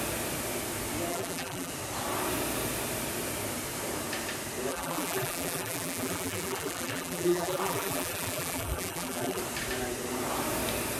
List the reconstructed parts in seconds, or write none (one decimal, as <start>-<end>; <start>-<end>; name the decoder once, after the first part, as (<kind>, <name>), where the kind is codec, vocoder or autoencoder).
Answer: 1.1-1.7 (vocoder, BigVGAN v2); 4.7-9.4